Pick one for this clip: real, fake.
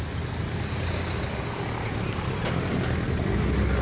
real